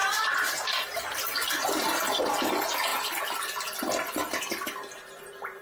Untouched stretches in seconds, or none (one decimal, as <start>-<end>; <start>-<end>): 2.2-5.6